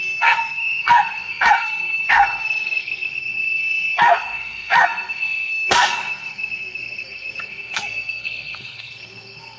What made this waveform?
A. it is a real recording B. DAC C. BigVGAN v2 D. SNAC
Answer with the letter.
D